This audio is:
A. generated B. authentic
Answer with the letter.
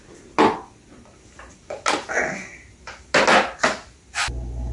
B